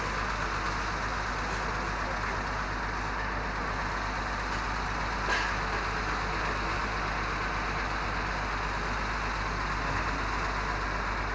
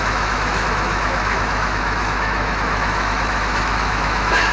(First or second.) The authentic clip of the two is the first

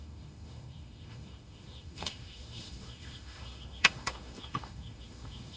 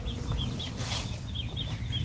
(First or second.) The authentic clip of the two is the second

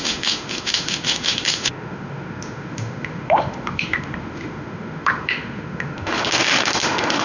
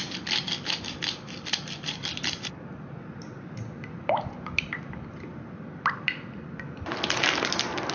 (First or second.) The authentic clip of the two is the second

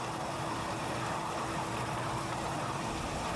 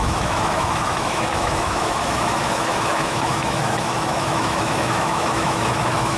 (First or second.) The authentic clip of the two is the first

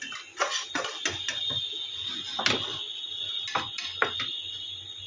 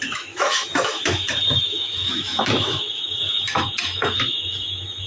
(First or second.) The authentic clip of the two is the first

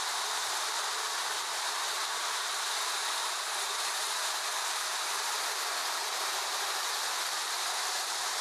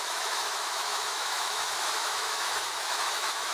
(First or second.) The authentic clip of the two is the first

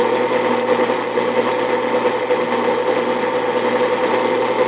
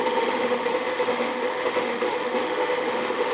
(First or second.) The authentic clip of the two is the first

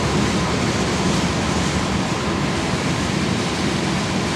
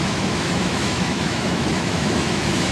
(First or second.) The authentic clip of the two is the first